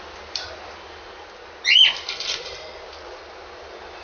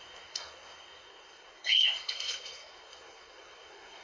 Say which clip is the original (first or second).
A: first